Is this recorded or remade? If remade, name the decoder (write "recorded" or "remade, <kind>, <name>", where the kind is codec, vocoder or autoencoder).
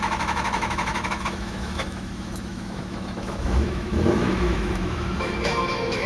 remade, autoencoder, DAC-VAE